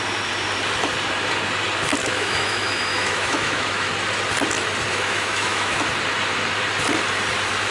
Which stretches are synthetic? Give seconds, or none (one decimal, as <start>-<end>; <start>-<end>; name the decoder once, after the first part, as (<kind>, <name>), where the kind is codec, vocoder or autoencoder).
2.0-3.9 (autoencoder, DAC-VAE); 4.9-5.8